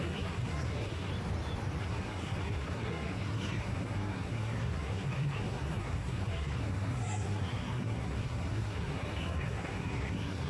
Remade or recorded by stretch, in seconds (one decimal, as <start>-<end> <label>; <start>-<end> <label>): 0.0-1.1 remade; 1.1-1.8 recorded; 1.8-10.5 remade